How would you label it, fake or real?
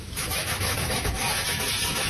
fake